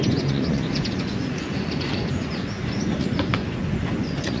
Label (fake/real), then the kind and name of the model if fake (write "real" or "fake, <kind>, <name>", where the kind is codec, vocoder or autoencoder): fake, vocoder, Vocos